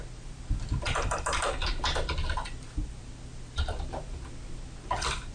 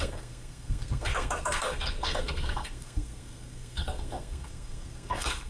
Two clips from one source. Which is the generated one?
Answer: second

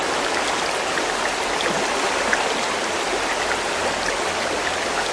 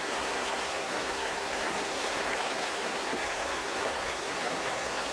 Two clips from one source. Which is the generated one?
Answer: second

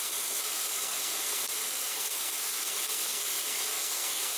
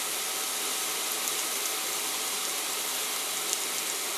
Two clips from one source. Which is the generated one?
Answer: first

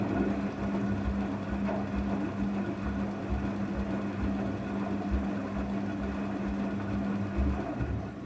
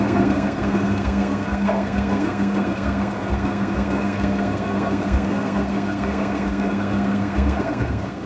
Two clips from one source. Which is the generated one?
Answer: second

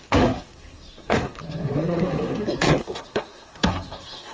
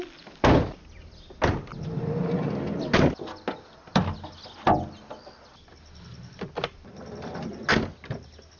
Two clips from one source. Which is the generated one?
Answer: first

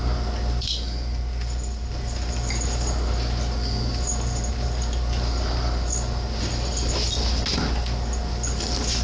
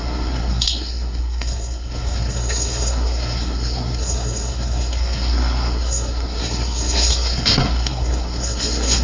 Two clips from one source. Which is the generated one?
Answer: second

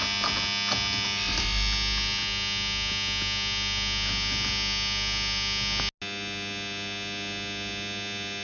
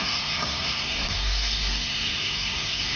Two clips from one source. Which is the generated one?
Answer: second